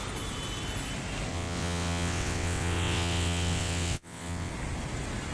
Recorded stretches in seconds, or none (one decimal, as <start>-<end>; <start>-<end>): 0.0-1.3; 4.5-5.3